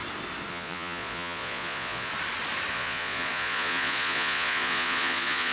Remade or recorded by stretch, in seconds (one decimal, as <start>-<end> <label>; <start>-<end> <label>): 0.0-0.5 recorded; 0.5-2.1 remade; 2.1-2.7 recorded; 2.7-5.5 remade